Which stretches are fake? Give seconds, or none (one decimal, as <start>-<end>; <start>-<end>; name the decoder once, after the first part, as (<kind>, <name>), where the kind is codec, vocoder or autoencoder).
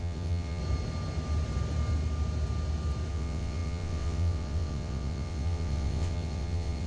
0.0-0.6 (vocoder, WaveNeXt); 3.1-6.9